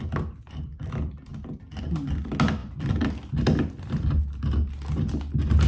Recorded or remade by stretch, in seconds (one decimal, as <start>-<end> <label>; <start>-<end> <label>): 0.0-5.7 recorded